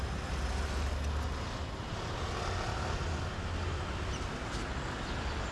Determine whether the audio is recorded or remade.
recorded